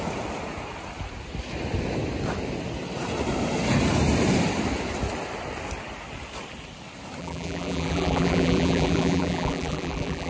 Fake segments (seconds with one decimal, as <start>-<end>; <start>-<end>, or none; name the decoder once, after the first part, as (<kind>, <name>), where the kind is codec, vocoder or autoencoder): 7.2-10.3 (vocoder, BigVGAN v2)